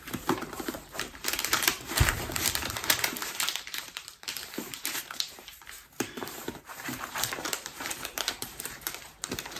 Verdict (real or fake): fake